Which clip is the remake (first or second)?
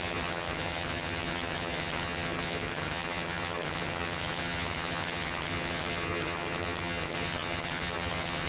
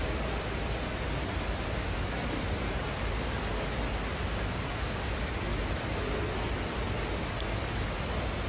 first